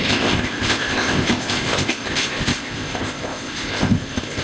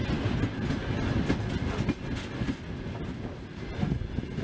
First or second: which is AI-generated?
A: first